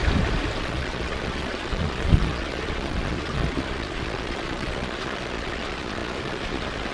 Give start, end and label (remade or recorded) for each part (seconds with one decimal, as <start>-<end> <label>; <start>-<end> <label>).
0.0-0.6 recorded; 0.6-6.9 remade